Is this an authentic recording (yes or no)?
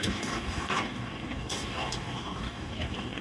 no